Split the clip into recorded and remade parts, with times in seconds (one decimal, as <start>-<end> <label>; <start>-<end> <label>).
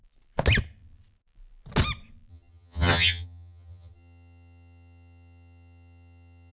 0.0-2.3 recorded; 2.3-6.5 remade